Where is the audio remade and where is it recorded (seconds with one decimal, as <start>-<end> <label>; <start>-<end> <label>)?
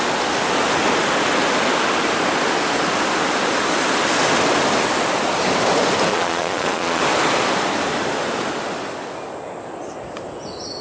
0.0-6.1 recorded; 6.1-7.0 remade; 7.0-10.8 recorded